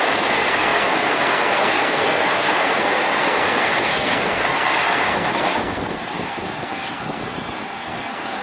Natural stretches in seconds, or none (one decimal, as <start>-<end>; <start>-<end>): none